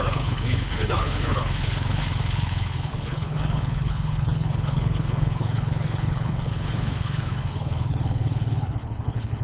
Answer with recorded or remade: remade